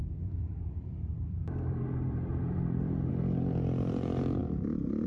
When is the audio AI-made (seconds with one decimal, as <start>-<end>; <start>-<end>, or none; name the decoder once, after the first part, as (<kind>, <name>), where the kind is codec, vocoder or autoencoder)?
0.0-5.1 (vocoder, BigVGAN v2)